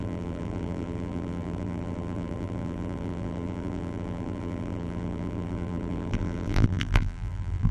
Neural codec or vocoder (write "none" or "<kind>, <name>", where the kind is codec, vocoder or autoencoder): vocoder, BigVGAN v2